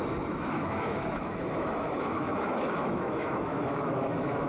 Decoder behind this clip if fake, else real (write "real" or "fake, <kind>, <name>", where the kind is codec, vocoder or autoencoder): fake, autoencoder, DAC-VAE